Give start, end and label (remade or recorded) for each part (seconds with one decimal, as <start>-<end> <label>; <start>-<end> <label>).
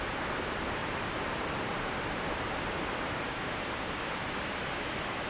0.0-0.8 recorded; 0.8-2.7 remade; 2.7-5.3 recorded